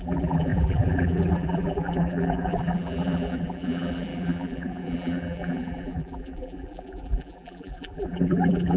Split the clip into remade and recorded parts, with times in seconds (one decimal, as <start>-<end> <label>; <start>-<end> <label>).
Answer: 0.0-8.8 remade